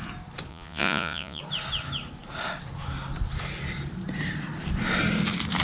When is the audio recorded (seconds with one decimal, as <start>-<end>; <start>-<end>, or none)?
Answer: 0.0-0.5; 1.4-5.6